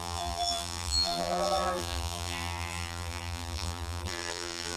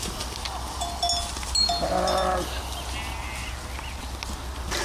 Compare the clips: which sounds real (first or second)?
second